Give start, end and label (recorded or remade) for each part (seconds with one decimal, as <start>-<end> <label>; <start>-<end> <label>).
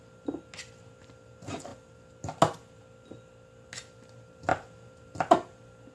0.0-5.9 recorded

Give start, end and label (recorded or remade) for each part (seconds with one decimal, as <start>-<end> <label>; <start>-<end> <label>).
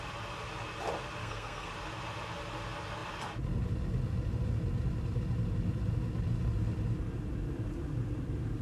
0.0-1.2 recorded; 1.2-1.7 remade; 1.7-8.6 recorded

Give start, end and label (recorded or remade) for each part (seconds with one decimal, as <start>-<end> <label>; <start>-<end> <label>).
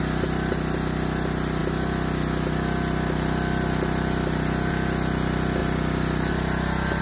0.0-5.6 recorded; 5.6-6.3 remade; 6.3-7.0 recorded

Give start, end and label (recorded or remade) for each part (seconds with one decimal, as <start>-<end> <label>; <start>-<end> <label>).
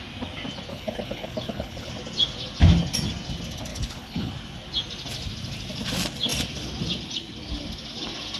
0.0-0.7 recorded; 0.7-1.9 remade; 1.9-3.7 recorded; 3.7-4.3 remade; 4.3-8.4 recorded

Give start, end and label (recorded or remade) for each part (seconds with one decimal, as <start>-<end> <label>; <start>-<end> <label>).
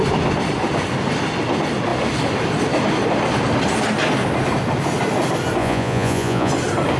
0.0-5.6 recorded; 5.6-6.5 remade; 6.5-7.0 recorded